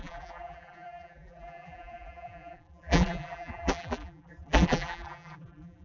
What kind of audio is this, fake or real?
fake